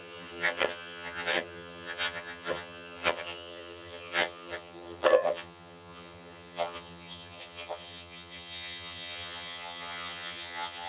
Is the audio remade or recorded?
remade